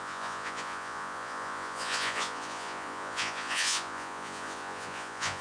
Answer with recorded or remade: remade